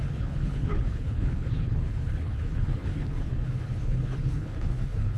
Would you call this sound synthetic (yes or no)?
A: yes